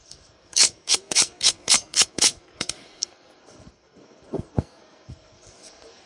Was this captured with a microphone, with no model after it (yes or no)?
no